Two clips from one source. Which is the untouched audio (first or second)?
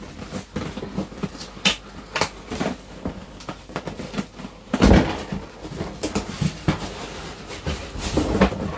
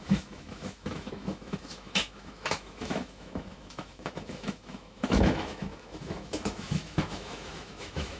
first